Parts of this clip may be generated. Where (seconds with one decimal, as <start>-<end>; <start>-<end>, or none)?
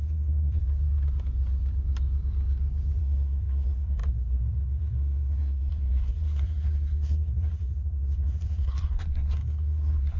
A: 0.0-0.6; 3.0-10.2